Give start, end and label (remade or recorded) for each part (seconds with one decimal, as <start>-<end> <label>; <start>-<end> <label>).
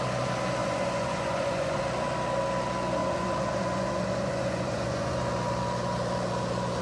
0.0-0.6 recorded; 0.6-1.8 remade; 1.8-3.0 recorded; 3.0-5.2 remade; 5.2-6.8 recorded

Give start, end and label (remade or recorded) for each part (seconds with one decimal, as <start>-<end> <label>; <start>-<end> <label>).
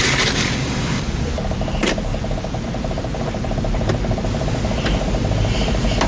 0.0-1.2 remade; 1.2-6.1 recorded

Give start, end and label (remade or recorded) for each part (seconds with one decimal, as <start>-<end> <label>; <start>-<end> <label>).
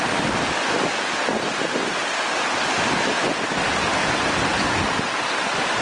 0.0-5.8 recorded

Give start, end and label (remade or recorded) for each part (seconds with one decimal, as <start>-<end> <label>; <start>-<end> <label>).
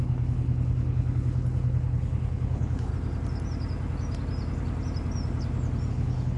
0.0-2.9 remade; 2.9-5.9 recorded; 5.9-6.4 remade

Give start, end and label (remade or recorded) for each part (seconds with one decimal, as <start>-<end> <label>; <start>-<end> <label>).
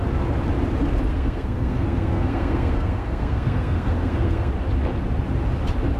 0.0-1.1 recorded; 1.1-4.5 remade; 4.5-6.0 recorded